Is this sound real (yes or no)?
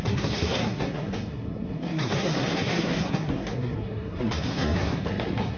no